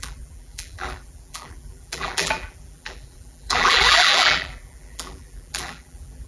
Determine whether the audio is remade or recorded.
remade